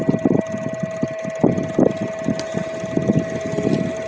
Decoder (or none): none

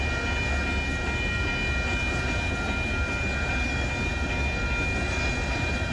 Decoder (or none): none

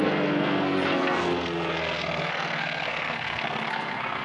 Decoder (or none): codec, SNAC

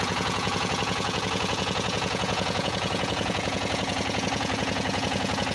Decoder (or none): vocoder, Vocos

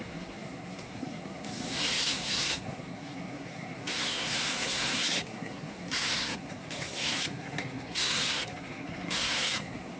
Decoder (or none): codec, SNAC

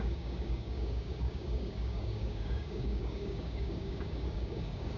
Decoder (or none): codec, DAC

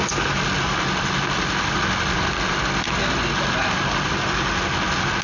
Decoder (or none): none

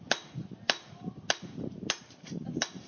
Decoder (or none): none